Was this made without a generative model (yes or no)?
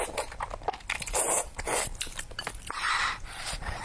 yes